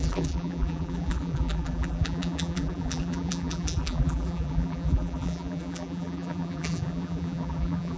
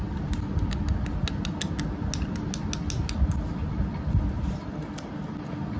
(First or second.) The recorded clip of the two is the second